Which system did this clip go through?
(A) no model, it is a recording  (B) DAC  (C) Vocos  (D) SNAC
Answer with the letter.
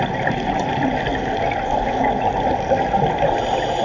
A